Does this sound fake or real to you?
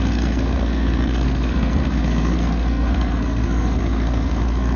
fake